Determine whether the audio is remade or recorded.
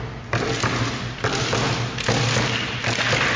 recorded